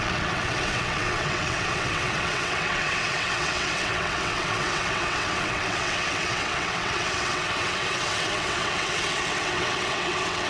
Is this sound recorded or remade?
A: remade